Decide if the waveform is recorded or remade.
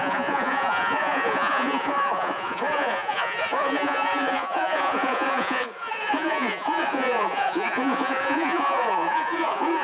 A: remade